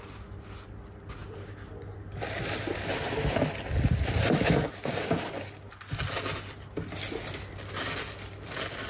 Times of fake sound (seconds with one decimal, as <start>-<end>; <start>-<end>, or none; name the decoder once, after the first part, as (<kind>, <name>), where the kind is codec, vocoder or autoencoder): none